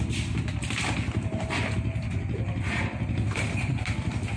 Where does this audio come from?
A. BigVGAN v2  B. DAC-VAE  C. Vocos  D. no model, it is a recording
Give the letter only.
D